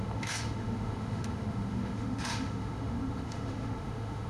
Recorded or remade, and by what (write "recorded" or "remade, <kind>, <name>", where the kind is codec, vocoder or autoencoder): remade, autoencoder, DAC-VAE